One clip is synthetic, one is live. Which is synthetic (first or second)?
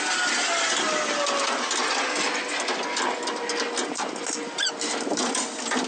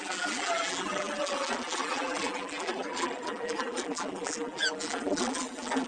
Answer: second